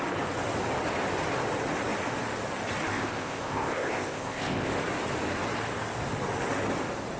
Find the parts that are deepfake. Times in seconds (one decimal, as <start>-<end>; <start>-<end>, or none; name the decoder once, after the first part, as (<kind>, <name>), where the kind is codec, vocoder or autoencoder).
2.9-4.7 (codec, ZipCodec)